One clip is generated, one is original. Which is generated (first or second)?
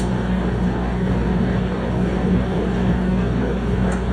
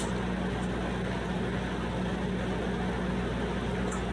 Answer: first